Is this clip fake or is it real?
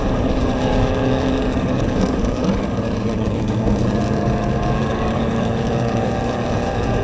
fake